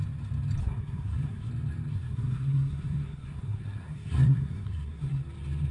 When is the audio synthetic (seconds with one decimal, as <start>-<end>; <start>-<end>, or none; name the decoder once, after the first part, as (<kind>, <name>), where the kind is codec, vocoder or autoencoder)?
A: 0.6-1.5 (codec, SNAC); 1.9-5.2